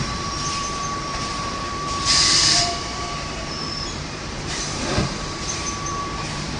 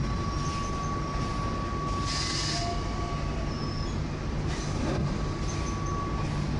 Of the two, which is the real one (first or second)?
second